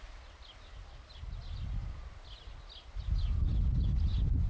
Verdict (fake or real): real